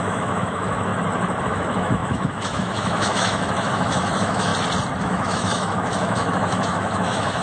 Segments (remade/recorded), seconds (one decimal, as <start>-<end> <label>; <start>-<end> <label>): 0.0-0.9 remade; 0.9-1.4 recorded; 1.4-4.5 remade; 4.5-5.0 recorded; 5.0-7.4 remade